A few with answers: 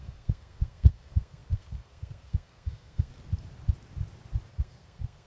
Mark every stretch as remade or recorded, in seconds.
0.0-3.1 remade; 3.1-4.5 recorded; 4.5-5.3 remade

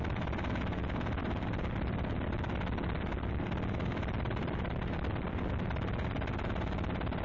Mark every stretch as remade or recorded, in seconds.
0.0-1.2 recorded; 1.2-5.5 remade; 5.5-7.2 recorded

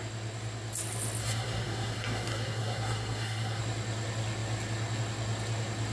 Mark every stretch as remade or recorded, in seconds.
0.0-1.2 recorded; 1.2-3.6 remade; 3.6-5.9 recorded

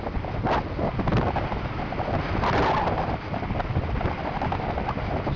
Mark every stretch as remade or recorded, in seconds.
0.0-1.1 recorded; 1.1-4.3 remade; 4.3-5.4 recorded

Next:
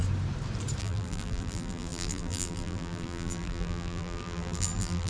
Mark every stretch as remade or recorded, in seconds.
0.0-0.8 recorded; 0.8-5.1 remade

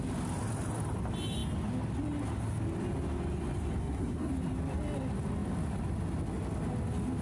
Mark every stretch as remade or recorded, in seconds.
0.0-3.8 recorded; 3.8-4.3 remade; 4.3-7.2 recorded

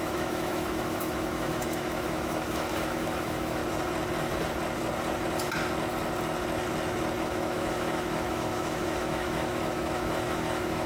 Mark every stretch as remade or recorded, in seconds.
0.0-3.6 remade; 3.6-7.2 recorded; 7.2-10.9 remade